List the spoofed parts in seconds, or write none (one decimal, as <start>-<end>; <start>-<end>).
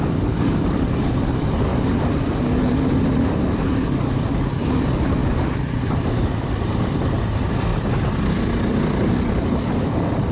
0.0-1.7; 4.1-7.7; 9.3-10.3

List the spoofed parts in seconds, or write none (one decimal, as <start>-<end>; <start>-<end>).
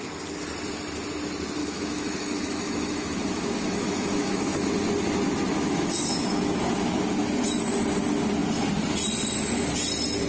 1.6-4.7; 5.5-6.9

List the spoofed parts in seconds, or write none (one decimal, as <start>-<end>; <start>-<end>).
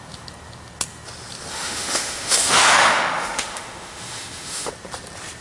1.5-4.7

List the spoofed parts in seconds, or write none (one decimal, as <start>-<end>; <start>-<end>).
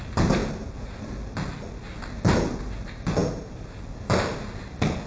none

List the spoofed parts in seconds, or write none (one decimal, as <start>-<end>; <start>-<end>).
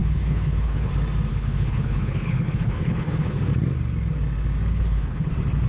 0.0-0.9; 1.3-3.4; 4.7-5.3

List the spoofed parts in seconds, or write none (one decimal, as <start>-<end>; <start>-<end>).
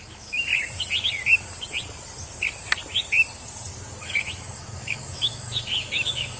0.0-0.5; 4.0-6.4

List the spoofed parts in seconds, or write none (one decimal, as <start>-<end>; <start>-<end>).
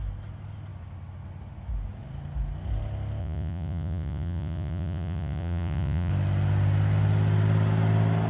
3.2-6.1